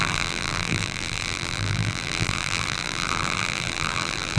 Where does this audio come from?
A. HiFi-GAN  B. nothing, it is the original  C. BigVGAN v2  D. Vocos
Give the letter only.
C